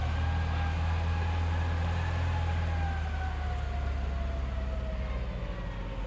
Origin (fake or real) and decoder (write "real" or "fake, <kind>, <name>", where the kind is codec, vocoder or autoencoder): real